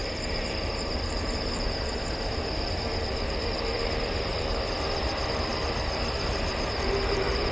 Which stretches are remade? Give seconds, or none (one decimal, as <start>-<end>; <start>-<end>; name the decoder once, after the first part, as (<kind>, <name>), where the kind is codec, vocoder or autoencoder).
0.0-5.0 (vocoder, BigVGAN v2); 5.5-7.5